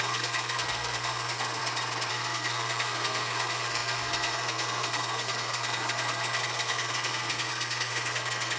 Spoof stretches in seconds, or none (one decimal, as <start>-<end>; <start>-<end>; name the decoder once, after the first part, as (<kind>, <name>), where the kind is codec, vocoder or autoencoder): 0.0-1.6 (codec, SNAC); 2.1-8.6